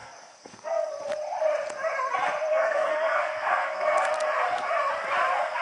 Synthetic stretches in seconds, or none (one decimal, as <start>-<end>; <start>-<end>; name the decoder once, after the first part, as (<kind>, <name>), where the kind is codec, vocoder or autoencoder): 0.0-0.9 (codec, SNAC); 2.5-4.1